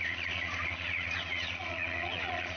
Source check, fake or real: fake